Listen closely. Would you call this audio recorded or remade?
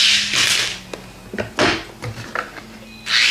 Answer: recorded